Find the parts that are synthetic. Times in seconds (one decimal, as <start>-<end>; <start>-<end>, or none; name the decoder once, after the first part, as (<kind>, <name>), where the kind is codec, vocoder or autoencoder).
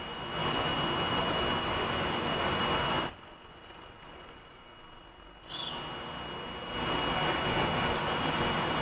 0.0-4.6 (vocoder, Vocos); 7.3-8.8